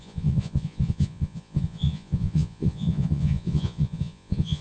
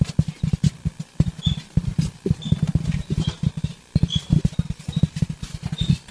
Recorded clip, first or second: second